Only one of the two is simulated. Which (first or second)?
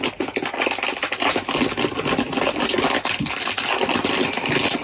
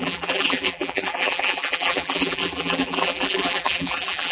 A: second